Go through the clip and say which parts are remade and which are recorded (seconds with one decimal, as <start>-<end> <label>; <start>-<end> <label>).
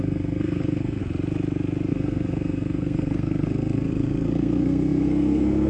0.0-1.0 remade; 1.0-1.9 recorded; 1.9-5.7 remade